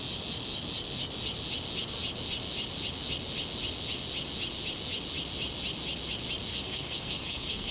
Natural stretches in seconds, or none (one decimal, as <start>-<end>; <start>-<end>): 0.0-6.5